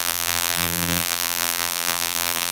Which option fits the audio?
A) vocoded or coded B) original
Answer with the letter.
A